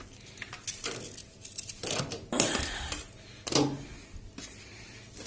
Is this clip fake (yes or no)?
no